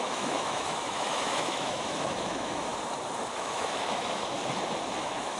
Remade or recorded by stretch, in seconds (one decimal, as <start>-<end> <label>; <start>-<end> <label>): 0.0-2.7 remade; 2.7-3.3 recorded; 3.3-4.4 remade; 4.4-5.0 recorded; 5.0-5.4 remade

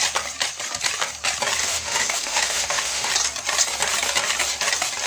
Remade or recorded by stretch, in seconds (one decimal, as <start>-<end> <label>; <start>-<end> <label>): 0.0-1.6 recorded; 1.6-3.1 remade; 3.1-5.1 recorded

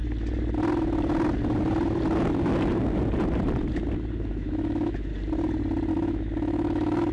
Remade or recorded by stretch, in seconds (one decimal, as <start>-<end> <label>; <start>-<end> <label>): 0.0-4.3 recorded; 4.3-5.1 remade; 5.1-5.9 recorded; 5.9-7.1 remade